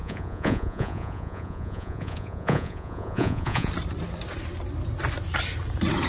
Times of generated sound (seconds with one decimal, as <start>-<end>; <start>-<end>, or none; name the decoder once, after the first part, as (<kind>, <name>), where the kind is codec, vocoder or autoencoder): 0.0-3.7 (vocoder, Vocos)